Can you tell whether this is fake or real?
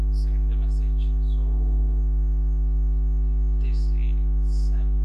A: real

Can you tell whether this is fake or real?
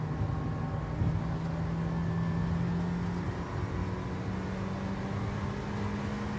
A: real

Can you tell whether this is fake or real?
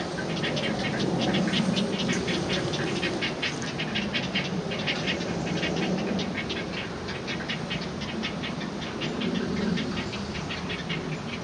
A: real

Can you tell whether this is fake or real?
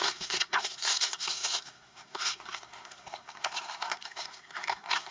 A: fake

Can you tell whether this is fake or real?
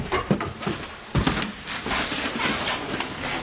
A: real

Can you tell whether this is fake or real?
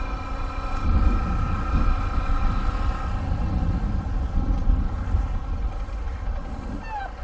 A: real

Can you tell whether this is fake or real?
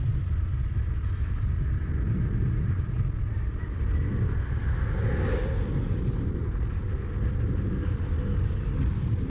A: real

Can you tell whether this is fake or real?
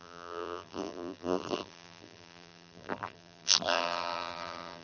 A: fake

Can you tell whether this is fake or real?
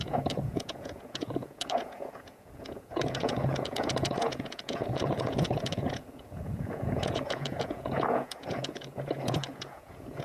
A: fake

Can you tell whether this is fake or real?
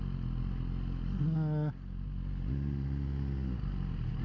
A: real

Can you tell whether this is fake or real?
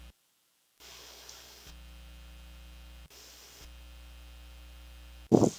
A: real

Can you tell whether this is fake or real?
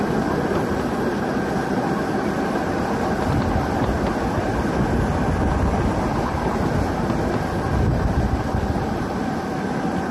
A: real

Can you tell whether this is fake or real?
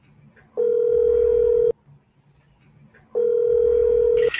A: real